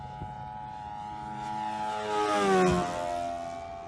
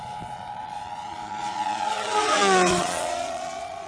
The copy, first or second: second